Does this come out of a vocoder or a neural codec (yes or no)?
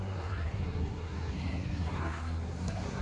yes